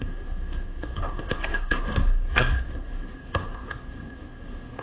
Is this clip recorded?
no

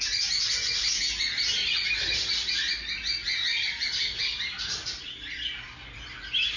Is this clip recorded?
yes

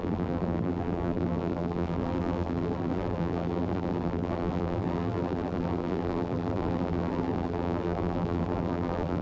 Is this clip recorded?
no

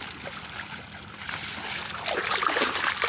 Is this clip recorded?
yes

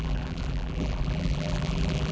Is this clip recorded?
no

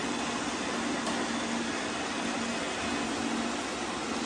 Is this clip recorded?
yes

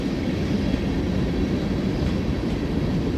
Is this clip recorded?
yes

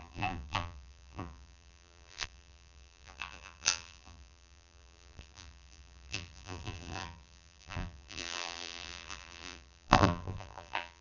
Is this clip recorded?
no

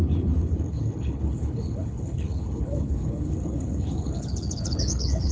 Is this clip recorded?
no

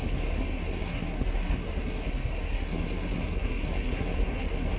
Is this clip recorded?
no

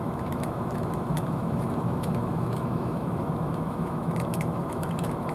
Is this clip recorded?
no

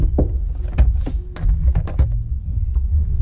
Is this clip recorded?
yes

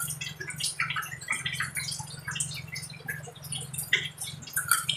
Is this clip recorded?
yes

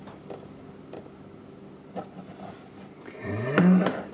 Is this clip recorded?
yes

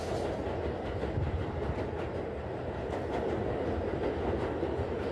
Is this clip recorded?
yes